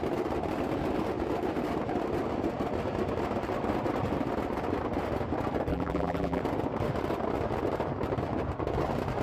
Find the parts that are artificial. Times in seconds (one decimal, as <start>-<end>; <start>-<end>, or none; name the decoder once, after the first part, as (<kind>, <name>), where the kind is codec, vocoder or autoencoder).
5.7-6.4 (vocoder, BigVGAN v2)